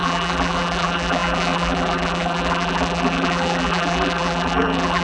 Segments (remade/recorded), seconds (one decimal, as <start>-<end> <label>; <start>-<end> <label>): 0.0-5.0 remade